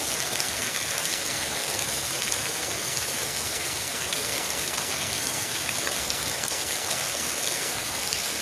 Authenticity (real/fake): fake